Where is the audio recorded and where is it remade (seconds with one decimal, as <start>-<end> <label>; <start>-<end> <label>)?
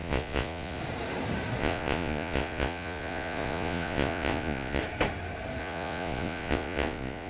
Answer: 0.0-0.8 remade; 0.8-1.6 recorded; 1.6-4.8 remade; 4.8-5.6 recorded; 5.6-7.3 remade